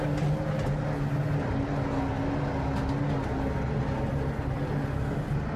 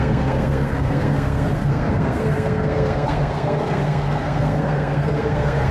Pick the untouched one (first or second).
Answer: first